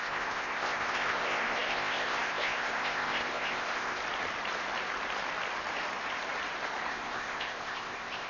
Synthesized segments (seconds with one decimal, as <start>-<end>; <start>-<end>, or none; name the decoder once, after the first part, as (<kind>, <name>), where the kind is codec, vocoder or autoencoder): 0.0-4.0 (codec, ZipCodec); 6.9-8.3